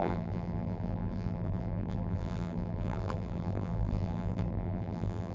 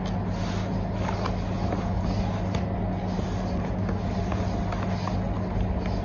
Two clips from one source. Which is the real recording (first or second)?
second